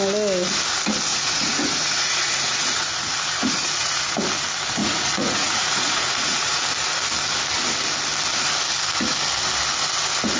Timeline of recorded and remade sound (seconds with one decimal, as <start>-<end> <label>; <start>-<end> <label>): 0.0-1.1 recorded; 1.1-4.2 remade; 4.2-4.8 recorded; 4.8-6.6 remade; 6.6-10.4 recorded